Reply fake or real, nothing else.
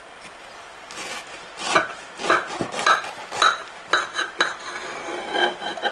real